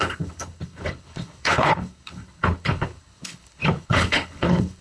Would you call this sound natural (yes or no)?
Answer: no